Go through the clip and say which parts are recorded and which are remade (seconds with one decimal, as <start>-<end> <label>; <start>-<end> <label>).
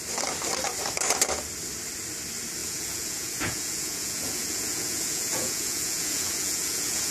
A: 0.0-2.6 recorded; 2.6-7.1 remade